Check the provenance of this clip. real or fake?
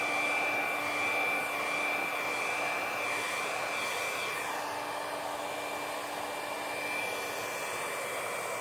real